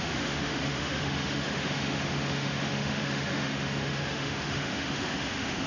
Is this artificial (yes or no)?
yes